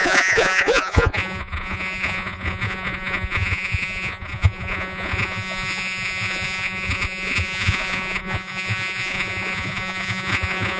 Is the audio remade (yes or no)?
yes